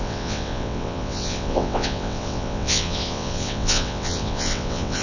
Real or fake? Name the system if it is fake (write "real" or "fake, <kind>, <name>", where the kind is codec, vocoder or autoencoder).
fake, vocoder, WaveNeXt